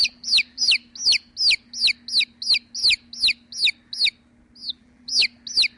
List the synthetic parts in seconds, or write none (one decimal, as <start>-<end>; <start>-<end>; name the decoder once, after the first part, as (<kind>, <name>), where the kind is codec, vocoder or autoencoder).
0.0-0.7 (vocoder, BigVGAN v2); 4.6-5.2